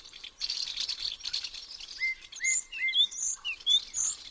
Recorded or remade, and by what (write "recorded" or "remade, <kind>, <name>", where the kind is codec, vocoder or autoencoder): remade, vocoder, BigVGAN v2